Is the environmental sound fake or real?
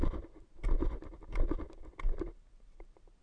real